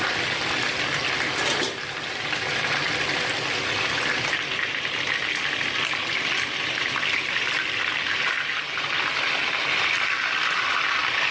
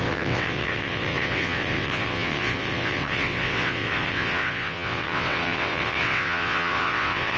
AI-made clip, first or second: second